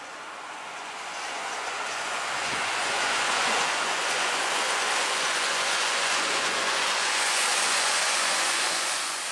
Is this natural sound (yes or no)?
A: no